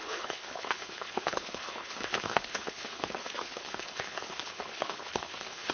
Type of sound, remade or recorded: remade